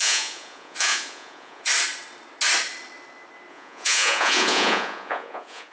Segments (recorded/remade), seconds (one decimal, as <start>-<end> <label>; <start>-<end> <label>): 0.0-1.7 remade; 1.7-3.5 recorded; 3.5-5.7 remade